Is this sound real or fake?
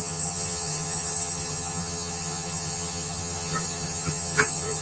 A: fake